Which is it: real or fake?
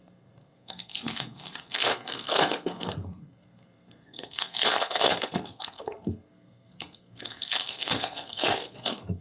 fake